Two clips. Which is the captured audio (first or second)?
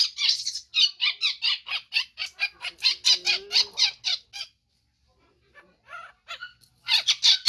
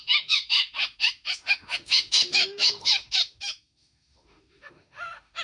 first